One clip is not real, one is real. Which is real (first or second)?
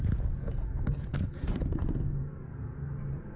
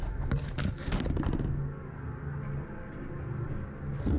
second